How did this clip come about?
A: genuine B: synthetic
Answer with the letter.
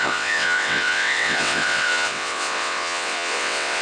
B